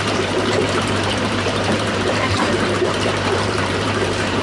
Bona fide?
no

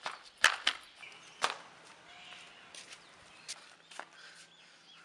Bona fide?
yes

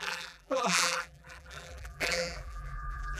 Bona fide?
no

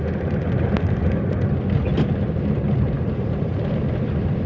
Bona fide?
no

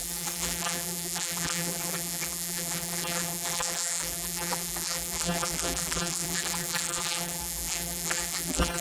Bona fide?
no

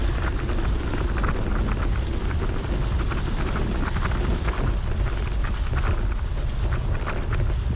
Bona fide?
yes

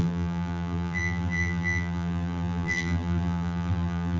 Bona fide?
no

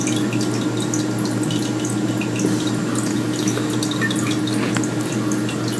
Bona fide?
yes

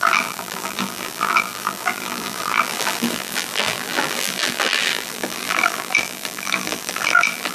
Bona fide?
no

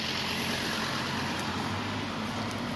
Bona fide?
yes